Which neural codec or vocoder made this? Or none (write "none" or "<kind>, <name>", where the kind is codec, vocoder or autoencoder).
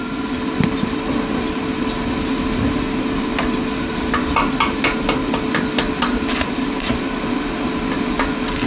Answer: none